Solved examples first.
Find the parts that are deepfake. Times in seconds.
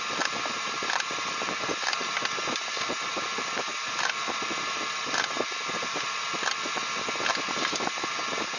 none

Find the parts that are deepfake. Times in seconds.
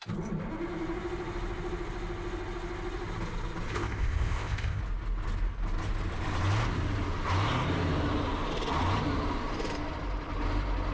3.7-4.8 (codec, ZipCodec)